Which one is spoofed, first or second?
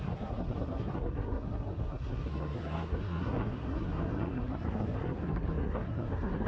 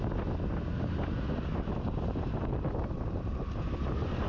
first